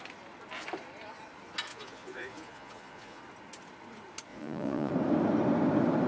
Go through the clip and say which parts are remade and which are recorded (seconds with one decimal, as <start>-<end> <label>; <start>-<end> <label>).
0.0-1.7 recorded; 1.7-3.2 remade; 3.2-4.3 recorded; 4.3-4.9 remade; 4.9-6.1 recorded